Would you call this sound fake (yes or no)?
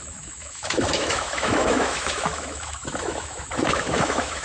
yes